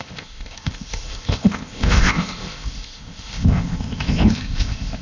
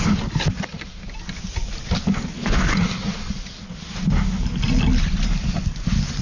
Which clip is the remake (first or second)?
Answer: first